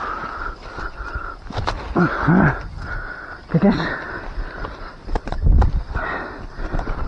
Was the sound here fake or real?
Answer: real